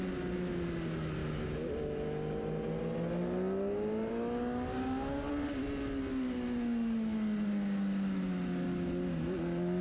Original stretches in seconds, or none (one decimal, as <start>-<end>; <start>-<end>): 0.0-9.8